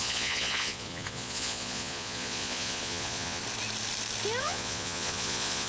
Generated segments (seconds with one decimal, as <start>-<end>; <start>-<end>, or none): 0.0-3.4; 4.4-5.7

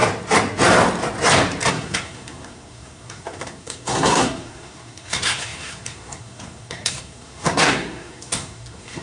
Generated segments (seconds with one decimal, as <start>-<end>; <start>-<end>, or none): 1.7-9.0

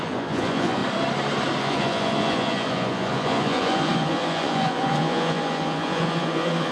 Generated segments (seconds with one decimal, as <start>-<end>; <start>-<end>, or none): 0.0-0.8; 1.6-6.7

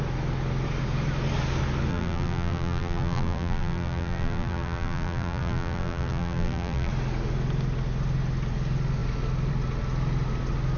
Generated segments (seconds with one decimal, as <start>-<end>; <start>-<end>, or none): 1.9-6.9

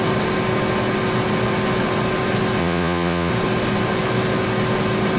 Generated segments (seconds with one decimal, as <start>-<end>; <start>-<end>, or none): 2.6-3.3

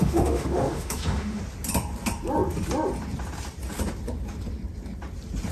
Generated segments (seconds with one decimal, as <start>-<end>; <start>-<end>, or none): 0.0-1.4

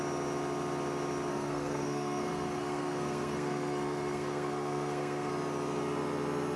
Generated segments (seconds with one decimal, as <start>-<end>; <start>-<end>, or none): 1.3-5.3